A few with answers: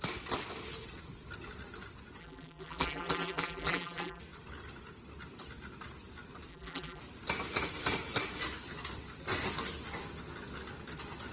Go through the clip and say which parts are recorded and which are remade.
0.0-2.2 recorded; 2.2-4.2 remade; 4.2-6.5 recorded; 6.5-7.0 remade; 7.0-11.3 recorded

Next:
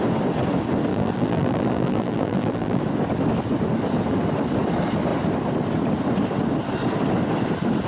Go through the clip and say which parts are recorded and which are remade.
0.0-0.9 recorded; 0.9-2.8 remade; 2.8-7.9 recorded